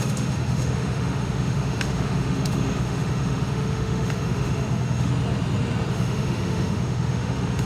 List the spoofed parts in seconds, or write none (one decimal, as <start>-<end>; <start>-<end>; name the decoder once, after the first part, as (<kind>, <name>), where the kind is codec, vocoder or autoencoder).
0.0-5.1 (autoencoder, DAC-VAE); 5.9-7.7